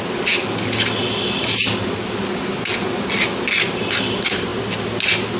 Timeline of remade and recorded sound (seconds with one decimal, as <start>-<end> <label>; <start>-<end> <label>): 0.0-5.4 recorded

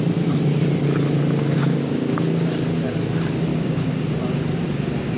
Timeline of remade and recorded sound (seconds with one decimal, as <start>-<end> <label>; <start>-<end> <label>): 0.0-1.4 recorded; 1.4-2.3 remade; 2.3-3.5 recorded; 3.5-4.2 remade; 4.2-5.2 recorded

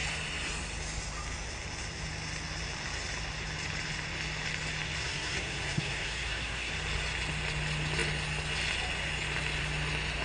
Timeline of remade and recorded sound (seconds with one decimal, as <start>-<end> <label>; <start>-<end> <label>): 0.0-5.0 recorded; 5.0-6.7 remade; 6.7-10.2 recorded

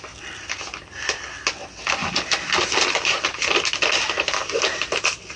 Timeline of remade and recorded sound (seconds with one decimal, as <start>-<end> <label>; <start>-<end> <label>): 0.0-5.4 recorded

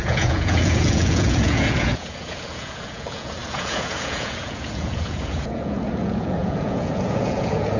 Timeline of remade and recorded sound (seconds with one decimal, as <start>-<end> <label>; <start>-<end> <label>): 0.0-7.8 remade

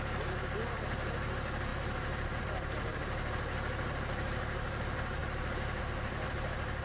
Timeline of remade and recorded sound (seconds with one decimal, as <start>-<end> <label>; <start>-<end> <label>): 0.0-1.7 recorded; 1.7-2.4 remade; 2.4-6.8 recorded

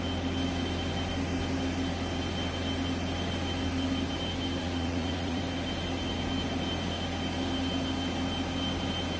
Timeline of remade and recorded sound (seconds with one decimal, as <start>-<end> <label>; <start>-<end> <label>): 0.0-4.6 recorded; 4.6-5.4 remade; 5.4-9.2 recorded